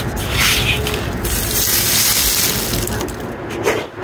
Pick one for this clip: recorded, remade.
recorded